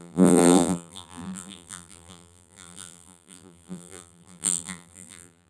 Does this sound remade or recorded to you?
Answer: remade